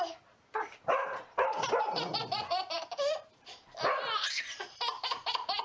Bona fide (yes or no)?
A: no